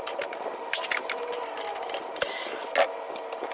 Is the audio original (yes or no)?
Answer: yes